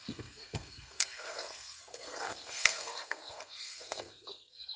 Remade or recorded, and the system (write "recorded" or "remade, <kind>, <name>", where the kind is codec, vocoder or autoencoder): remade, codec, SNAC